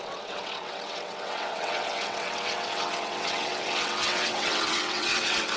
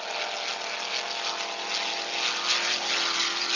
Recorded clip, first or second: second